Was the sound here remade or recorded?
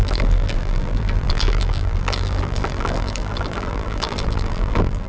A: remade